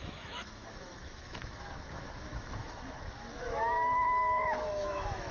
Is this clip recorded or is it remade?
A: remade